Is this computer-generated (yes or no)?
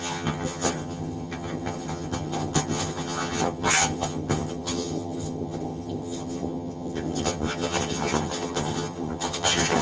yes